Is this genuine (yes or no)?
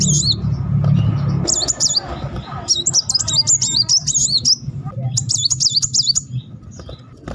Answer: yes